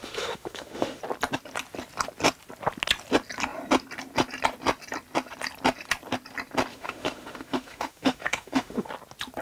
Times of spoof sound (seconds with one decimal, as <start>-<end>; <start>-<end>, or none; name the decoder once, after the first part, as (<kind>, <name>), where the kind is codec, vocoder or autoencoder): 0.0-1.0 (autoencoder, DAC-VAE); 6.7-8.9